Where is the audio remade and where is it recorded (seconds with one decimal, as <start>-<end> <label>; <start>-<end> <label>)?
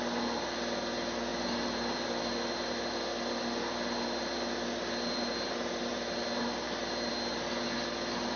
0.0-8.4 recorded